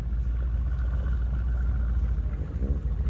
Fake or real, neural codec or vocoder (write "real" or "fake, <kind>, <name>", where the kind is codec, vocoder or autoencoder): real